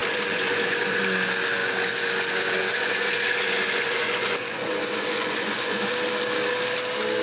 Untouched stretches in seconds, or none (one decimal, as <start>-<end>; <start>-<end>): 1.0-1.6; 5.9-7.2